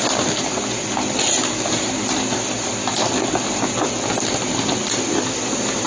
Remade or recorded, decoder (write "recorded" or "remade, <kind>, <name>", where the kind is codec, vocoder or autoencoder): recorded